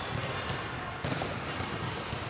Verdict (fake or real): real